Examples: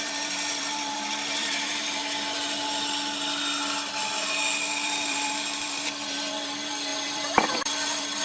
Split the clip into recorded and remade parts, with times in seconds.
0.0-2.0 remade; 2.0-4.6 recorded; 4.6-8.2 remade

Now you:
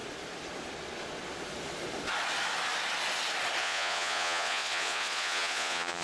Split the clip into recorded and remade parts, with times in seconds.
0.0-3.6 recorded; 3.6-6.0 remade

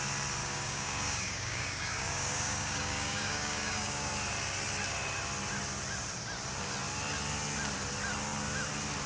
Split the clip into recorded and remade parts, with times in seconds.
0.0-0.4 recorded; 0.4-4.1 remade; 4.1-9.1 recorded